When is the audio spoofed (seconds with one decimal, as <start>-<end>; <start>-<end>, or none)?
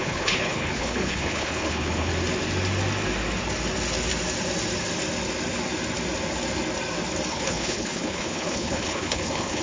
0.0-2.1; 7.3-9.6